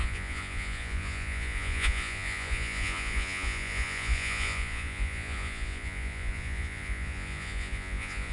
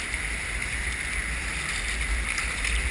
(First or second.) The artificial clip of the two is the first